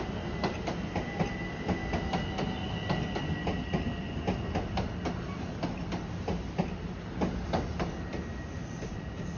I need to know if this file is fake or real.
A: real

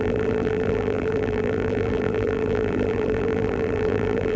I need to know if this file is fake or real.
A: fake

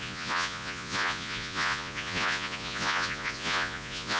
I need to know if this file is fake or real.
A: fake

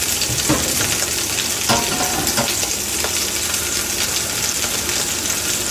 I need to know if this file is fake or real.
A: real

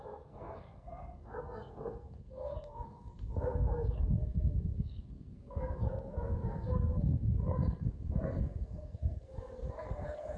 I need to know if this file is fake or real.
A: fake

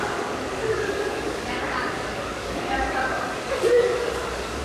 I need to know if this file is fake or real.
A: fake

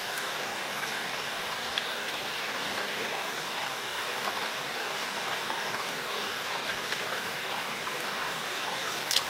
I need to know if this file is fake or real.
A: fake